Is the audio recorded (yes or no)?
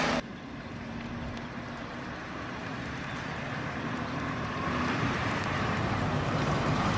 no